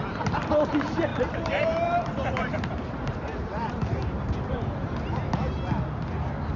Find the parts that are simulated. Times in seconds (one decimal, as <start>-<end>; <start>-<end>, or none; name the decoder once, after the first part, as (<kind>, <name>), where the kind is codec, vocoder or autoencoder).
1.1-5.1 (vocoder, BigVGAN v2)